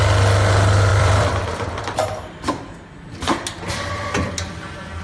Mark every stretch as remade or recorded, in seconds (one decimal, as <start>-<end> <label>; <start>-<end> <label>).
0.0-0.9 recorded; 0.9-2.5 remade; 2.5-5.0 recorded